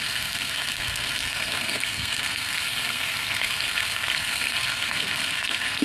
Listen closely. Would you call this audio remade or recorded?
remade